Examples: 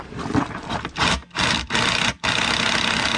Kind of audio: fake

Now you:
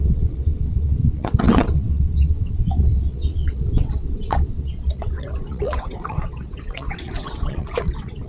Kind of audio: fake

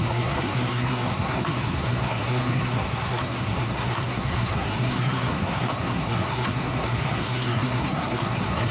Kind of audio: fake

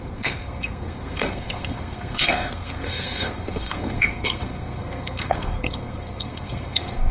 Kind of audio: fake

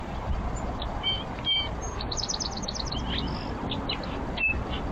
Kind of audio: real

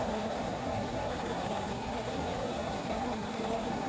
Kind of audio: fake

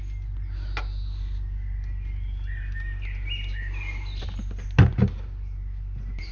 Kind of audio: real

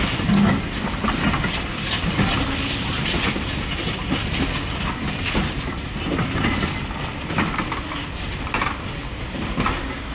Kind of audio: real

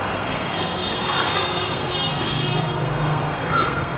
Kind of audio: fake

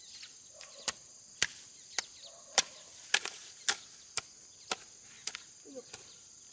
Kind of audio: real